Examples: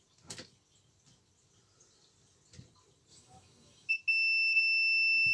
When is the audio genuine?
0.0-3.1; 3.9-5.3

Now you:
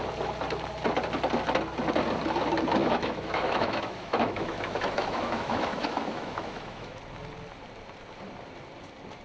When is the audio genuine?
0.0-2.8; 7.0-9.2

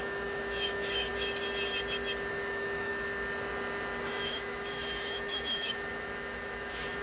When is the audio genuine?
1.1-2.3; 2.9-4.0